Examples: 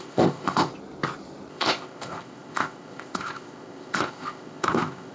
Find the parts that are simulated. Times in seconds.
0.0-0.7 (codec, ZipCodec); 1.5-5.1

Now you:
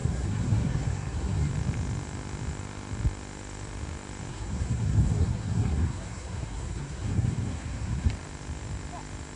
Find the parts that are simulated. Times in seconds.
0.0-1.5 (codec, SNAC); 4.3-8.1

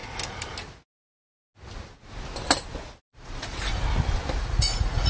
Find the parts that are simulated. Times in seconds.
3.1-3.7 (vocoder, Vocos); 4.4-5.1